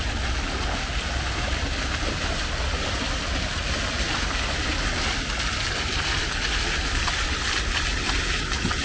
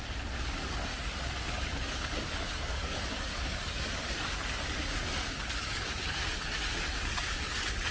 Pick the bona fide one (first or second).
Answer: first